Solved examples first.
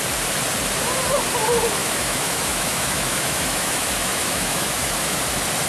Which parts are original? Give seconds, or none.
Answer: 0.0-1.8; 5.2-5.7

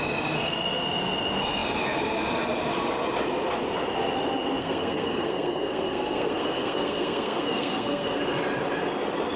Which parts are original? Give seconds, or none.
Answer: 0.0-4.6; 8.2-9.4

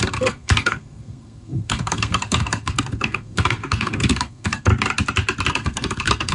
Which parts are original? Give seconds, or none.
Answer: 4.7-5.5

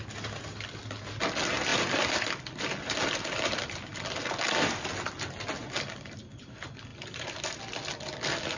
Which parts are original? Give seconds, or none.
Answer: 0.0-6.9; 7.6-8.6